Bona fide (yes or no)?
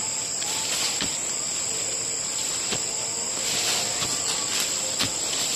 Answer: yes